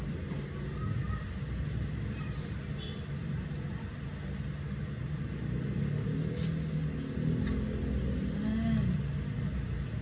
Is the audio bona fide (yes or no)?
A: yes